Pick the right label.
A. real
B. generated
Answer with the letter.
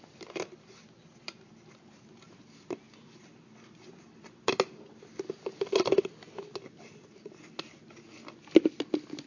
A